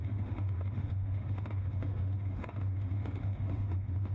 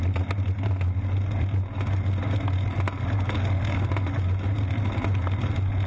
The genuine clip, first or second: second